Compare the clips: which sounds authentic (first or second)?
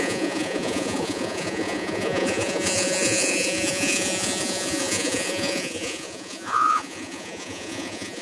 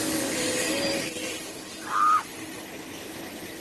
second